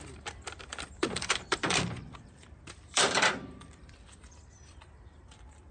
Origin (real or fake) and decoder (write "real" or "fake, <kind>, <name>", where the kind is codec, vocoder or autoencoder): fake, vocoder, BigVGAN v2